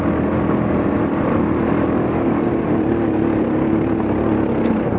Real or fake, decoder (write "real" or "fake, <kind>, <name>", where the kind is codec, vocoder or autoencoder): real